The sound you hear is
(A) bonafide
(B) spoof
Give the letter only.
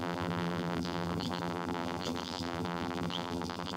B